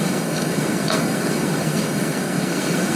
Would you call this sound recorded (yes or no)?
no